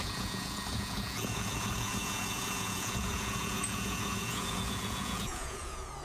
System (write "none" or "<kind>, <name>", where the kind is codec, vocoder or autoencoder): vocoder, Vocos